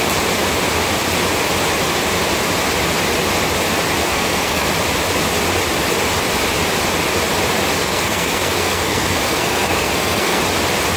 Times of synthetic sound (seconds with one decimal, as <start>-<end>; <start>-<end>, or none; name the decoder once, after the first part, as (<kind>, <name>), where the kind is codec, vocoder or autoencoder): 4.0-4.7 (codec, SNAC); 7.8-10.4